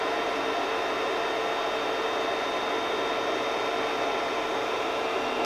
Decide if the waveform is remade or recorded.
recorded